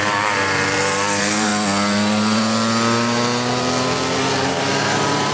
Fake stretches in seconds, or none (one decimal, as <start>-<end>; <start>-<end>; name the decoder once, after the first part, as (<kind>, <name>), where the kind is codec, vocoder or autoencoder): 0.0-1.5 (vocoder, BigVGAN v2); 4.7-5.3